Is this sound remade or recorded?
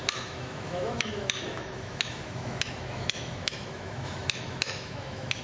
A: remade